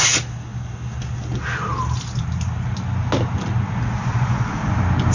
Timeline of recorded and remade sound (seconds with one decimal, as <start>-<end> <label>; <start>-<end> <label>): 0.0-4.0 recorded; 4.0-4.5 remade; 4.5-5.1 recorded